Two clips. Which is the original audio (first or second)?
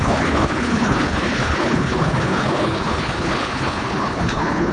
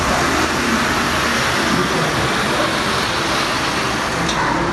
second